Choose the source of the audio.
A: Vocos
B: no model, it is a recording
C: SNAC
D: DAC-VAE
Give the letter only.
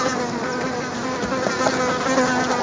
B